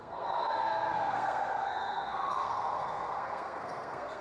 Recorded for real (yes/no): no